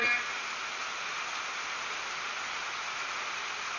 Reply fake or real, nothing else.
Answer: real